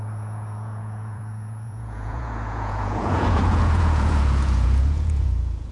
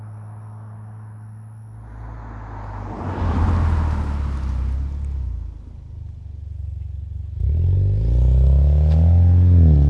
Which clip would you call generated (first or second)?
first